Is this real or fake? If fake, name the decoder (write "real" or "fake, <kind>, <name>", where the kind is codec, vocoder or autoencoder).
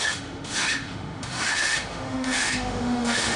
fake, autoencoder, DAC-VAE